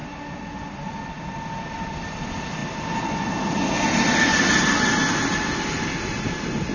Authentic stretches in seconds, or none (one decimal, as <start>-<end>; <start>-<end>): 0.0-6.7